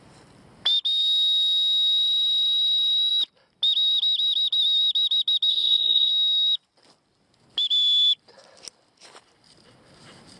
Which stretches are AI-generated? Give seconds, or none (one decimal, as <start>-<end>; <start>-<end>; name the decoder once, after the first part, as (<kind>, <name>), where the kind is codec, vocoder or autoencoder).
5.5-6.1 (codec, SNAC)